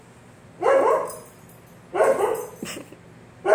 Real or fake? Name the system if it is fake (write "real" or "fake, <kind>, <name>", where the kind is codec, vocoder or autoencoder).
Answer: real